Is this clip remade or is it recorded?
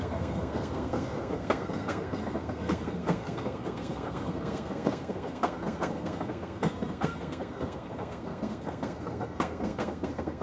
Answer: remade